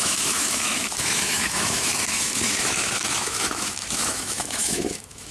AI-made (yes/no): yes